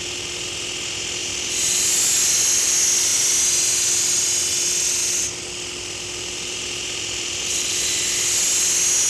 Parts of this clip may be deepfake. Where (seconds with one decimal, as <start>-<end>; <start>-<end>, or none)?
1.2-1.8; 5.0-7.5